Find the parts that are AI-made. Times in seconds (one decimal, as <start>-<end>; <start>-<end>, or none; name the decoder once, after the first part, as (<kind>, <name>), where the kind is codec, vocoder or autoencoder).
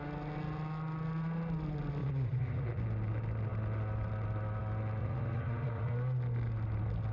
2.0-2.8 (vocoder, Vocos); 5.0-5.9